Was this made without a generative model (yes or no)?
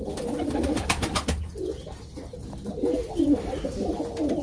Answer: yes